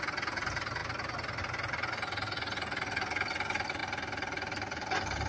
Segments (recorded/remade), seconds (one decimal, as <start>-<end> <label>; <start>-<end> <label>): 0.0-5.3 recorded